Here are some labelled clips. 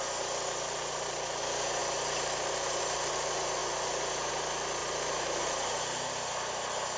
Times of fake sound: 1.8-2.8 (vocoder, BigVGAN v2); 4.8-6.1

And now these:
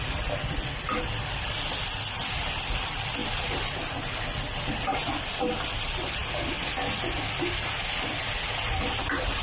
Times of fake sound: 0.0-6.2 (vocoder, BigVGAN v2); 8.0-9.4

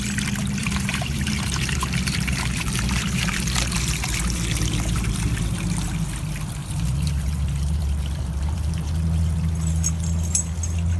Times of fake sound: 0.6-5.4 (vocoder, BigVGAN v2); 6.6-8.9